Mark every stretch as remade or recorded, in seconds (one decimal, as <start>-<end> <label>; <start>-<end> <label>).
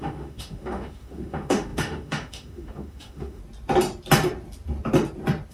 0.0-3.4 remade; 3.4-5.5 recorded